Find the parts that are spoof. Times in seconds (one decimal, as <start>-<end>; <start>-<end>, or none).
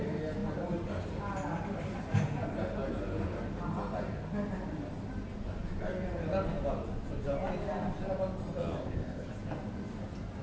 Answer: 8.8-9.3